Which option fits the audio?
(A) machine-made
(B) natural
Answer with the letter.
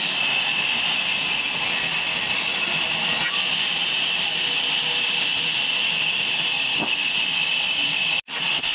B